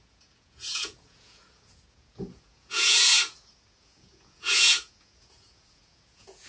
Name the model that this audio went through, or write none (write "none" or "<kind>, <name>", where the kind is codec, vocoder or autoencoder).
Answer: vocoder, Vocos